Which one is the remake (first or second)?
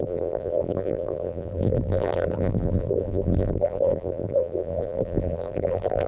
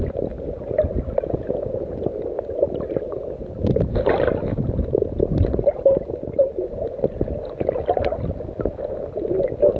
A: first